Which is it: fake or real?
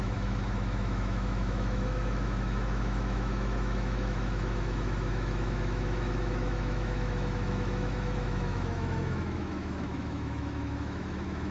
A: fake